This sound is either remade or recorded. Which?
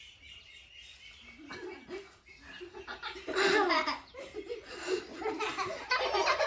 recorded